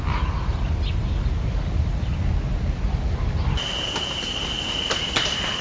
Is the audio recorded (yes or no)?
yes